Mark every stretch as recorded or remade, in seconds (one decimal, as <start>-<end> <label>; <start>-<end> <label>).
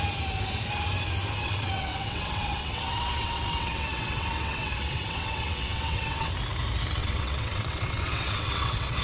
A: 0.0-1.4 recorded; 1.4-6.3 remade; 6.3-7.0 recorded; 7.0-9.0 remade